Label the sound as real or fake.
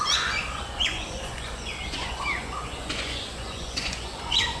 fake